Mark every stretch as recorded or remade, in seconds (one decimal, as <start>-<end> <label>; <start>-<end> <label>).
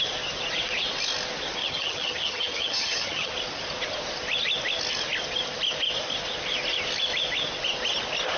0.0-1.6 recorded; 1.6-3.3 remade; 3.3-8.4 recorded